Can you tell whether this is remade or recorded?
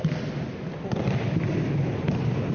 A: recorded